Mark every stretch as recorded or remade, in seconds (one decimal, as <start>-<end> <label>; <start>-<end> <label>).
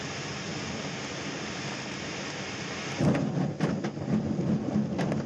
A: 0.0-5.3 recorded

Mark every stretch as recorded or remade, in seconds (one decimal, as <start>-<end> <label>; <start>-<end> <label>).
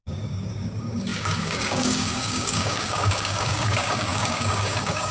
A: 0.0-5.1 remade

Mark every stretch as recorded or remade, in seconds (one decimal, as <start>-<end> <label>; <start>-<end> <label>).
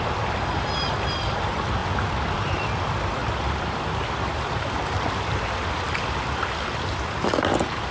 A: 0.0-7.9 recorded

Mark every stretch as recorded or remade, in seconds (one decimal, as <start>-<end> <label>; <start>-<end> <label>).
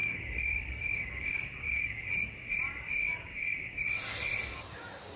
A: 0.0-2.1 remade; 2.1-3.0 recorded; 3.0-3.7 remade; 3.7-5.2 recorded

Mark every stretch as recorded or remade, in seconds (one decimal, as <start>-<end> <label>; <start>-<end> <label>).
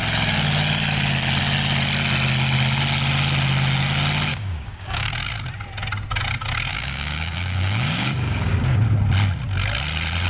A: 0.0-4.3 recorded; 4.3-5.1 remade; 5.1-6.7 recorded; 6.7-8.8 remade; 8.8-10.3 recorded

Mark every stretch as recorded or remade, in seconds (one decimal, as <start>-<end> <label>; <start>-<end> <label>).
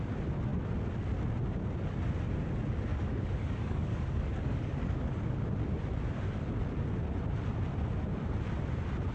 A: 0.0-2.9 recorded; 2.9-5.4 remade; 5.4-9.1 recorded